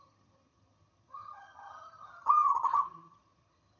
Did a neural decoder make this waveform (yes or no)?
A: yes